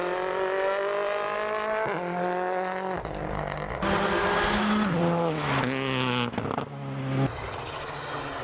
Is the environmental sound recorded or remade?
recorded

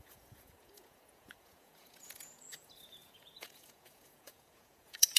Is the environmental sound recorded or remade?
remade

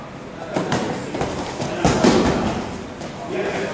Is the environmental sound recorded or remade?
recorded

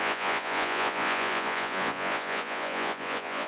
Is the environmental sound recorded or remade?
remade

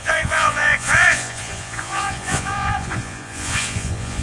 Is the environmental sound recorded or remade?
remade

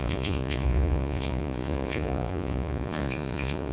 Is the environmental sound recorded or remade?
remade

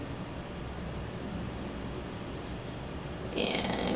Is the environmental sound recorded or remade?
recorded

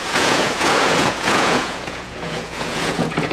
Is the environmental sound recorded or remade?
remade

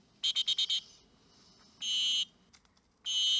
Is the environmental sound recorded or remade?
recorded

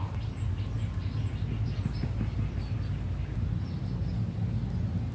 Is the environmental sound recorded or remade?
recorded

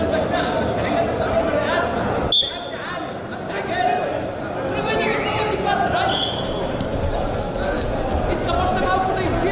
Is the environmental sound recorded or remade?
recorded